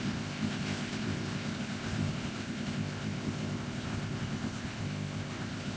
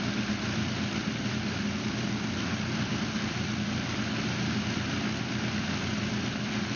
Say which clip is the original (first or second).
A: second